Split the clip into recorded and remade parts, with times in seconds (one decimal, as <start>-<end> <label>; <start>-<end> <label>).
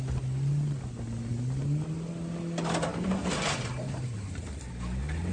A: 0.0-2.9 recorded; 2.9-4.7 remade; 4.7-5.3 recorded